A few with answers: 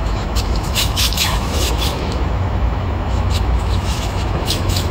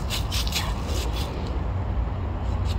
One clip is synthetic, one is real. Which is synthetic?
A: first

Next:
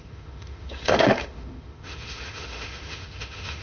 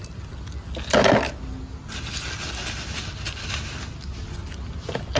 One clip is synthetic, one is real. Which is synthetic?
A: first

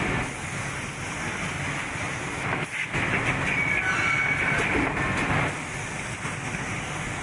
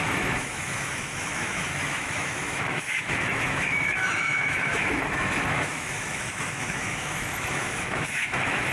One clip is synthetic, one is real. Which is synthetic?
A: second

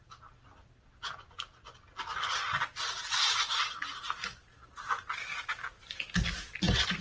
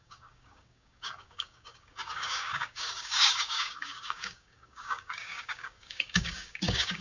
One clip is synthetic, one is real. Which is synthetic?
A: second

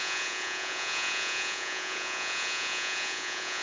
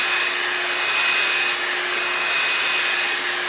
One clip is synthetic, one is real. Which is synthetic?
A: first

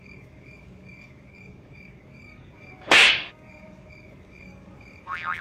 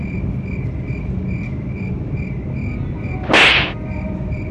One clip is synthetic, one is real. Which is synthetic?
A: first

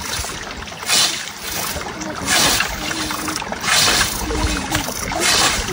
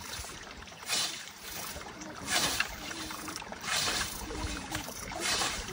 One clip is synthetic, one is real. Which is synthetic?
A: second